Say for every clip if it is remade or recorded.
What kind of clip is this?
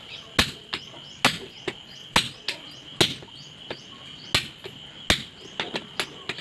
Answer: recorded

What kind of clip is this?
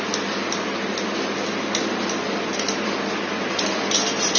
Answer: recorded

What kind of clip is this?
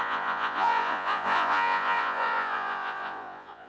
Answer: remade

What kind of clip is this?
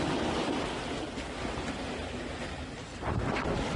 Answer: recorded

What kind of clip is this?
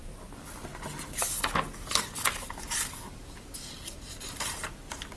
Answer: recorded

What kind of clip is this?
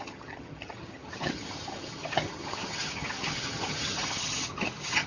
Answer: remade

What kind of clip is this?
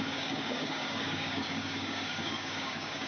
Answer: remade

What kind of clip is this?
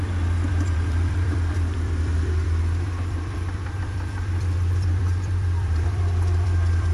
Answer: remade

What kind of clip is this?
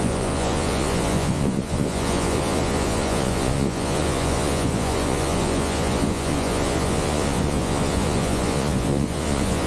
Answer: remade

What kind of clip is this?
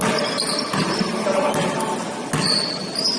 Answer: recorded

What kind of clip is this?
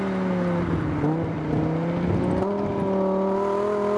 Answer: recorded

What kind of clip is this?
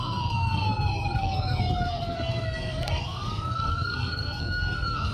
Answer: remade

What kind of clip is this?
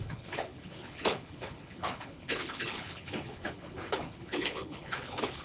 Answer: remade